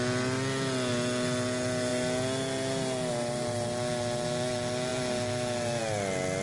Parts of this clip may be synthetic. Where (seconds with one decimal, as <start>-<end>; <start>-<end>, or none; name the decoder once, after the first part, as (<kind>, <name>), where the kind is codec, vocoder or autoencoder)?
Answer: none